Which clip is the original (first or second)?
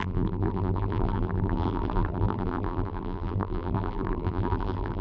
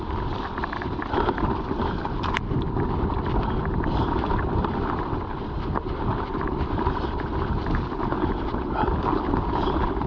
second